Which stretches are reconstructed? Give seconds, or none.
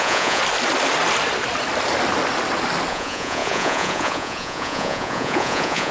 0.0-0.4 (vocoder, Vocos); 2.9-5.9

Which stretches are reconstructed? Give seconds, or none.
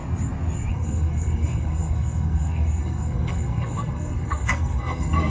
0.7-5.3 (codec, SNAC)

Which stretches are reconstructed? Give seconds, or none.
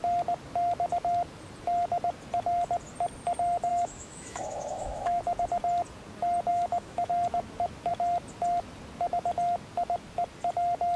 3.7-5.2 (autoencoder, DAC-VAE); 6.5-7.1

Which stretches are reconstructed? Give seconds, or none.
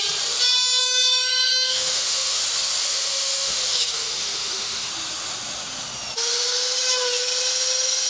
0.8-2.4 (autoencoder, DAC-VAE); 2.8-4.9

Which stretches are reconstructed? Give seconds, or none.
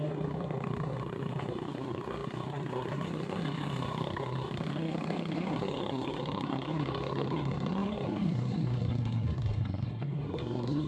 0.0-10.9 (codec, SNAC)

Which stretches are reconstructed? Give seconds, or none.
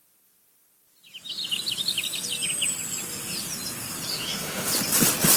4.1-4.7 (autoencoder, DAC-VAE)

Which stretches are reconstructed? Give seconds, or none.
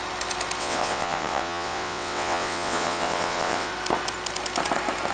0.6-3.7 (vocoder, WaveNeXt)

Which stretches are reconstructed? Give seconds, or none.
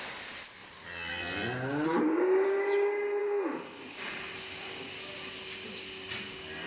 none